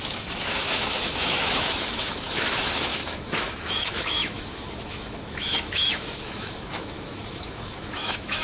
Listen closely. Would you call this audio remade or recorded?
remade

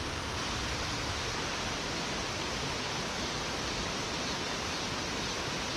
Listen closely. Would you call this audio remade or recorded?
recorded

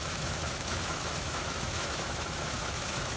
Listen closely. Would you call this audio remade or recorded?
remade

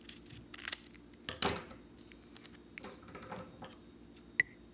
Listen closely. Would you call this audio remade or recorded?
recorded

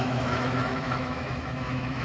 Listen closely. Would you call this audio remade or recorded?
remade